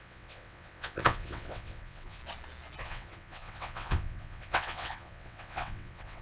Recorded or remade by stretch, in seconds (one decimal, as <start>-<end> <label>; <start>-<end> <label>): 0.0-2.2 remade; 2.2-2.8 recorded; 2.8-6.2 remade